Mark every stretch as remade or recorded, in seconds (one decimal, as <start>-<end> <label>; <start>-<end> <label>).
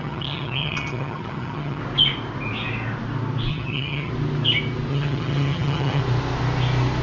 0.0-1.8 remade; 1.8-3.5 recorded; 3.5-4.1 remade; 4.1-4.9 recorded; 4.9-6.0 remade; 6.0-7.0 recorded